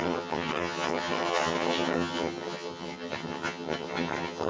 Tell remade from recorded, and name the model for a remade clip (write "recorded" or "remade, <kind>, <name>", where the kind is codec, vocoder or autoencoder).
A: remade, vocoder, HiFi-GAN